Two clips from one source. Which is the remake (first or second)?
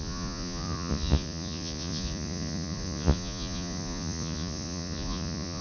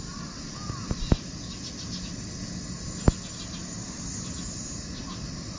first